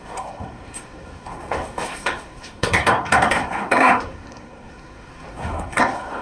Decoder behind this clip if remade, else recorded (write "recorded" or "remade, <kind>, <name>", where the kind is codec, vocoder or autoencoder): remade, codec, SNAC